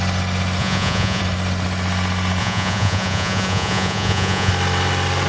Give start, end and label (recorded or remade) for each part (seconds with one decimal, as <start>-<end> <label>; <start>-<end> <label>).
0.0-0.6 recorded; 0.6-1.2 remade; 1.2-2.4 recorded; 2.4-4.5 remade; 4.5-5.3 recorded